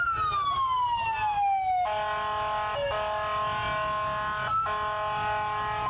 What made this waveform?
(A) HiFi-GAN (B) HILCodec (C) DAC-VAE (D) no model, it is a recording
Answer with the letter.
D